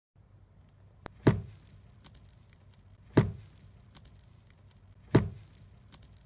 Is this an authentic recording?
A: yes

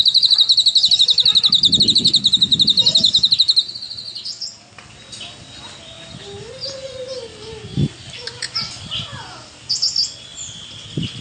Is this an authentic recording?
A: yes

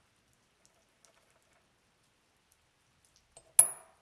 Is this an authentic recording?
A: yes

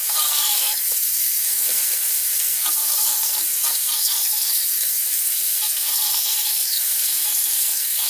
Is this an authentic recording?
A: no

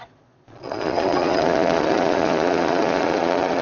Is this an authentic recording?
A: no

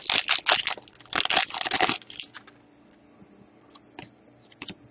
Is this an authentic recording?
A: yes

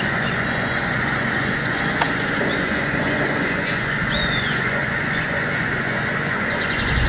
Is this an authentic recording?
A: no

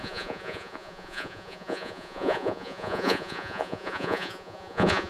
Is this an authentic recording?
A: no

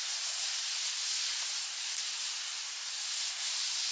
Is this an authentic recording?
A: no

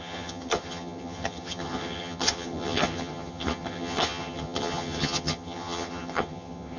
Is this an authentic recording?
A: no